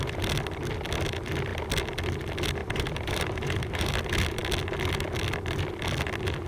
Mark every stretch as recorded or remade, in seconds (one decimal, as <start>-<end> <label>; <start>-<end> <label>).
0.0-2.6 recorded; 2.6-3.9 remade; 3.9-6.5 recorded